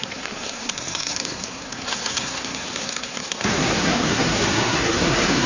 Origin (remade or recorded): remade